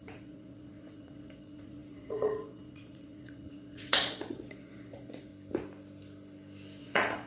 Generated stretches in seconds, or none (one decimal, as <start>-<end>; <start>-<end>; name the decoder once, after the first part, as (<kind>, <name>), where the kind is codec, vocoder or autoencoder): 0.0-5.3 (vocoder, Vocos); 6.8-7.3